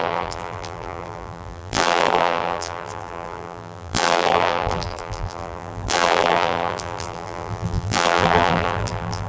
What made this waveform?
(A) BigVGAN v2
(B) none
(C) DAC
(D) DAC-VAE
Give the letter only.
A